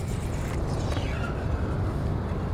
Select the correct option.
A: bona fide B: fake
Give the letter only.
B